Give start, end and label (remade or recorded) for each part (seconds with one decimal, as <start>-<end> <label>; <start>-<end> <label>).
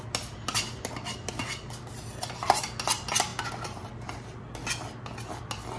0.0-5.8 recorded